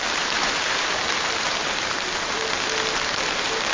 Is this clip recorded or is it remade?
recorded